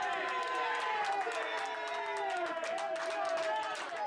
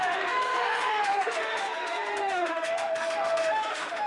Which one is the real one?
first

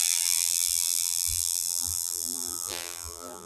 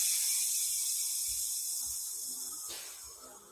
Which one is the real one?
second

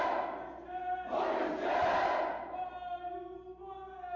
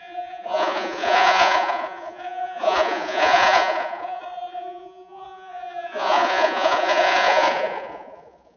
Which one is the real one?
first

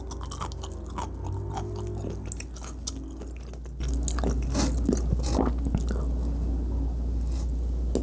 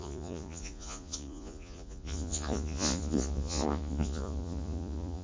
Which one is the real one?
first